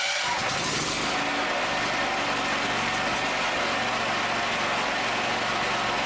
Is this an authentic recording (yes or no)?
yes